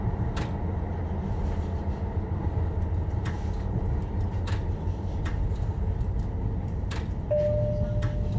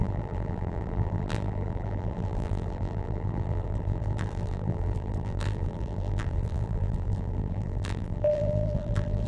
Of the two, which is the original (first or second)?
first